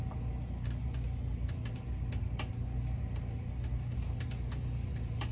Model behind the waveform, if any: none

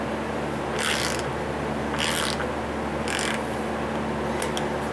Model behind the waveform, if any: none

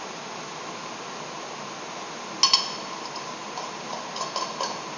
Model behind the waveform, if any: none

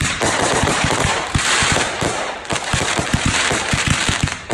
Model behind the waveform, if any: vocoder, BigVGAN v2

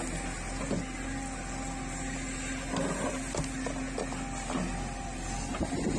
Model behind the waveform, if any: none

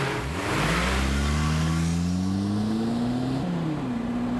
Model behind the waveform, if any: none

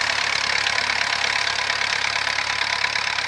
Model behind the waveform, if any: vocoder, BigVGAN v2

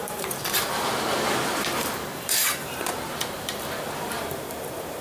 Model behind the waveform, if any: vocoder, BigVGAN v2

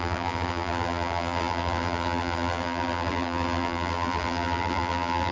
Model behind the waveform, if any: vocoder, BigVGAN v2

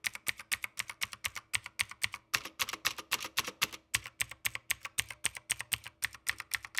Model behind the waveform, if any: none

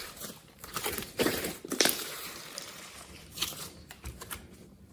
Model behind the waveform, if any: vocoder, BigVGAN v2